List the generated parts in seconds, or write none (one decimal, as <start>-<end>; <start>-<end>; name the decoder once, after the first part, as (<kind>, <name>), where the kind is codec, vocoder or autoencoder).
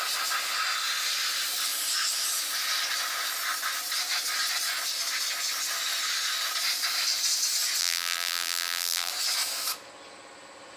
7.8-9.1 (vocoder, BigVGAN v2)